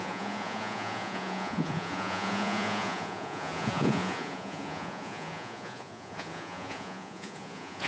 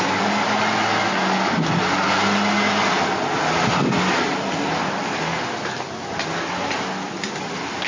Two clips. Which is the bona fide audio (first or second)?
second